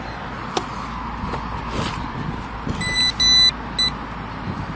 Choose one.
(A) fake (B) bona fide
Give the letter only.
B